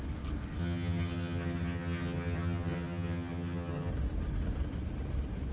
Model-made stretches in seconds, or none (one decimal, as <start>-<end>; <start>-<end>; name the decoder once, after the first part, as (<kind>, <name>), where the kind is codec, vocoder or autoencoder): 0.6-3.9 (vocoder, HiFi-GAN)